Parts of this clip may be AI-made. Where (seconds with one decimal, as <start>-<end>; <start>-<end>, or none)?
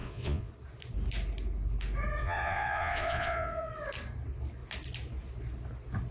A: 0.0-0.5; 2.2-3.7